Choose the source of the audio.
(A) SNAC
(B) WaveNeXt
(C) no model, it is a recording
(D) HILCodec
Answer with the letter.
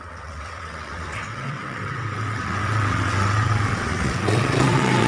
B